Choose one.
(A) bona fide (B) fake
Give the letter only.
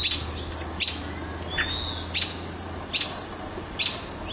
A